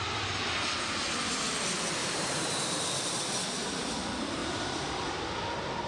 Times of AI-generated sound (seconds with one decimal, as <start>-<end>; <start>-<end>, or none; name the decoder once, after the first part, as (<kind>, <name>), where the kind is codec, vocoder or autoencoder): 2.0-3.1 (vocoder, BigVGAN v2); 4.4-4.9